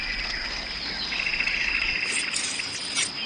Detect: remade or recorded recorded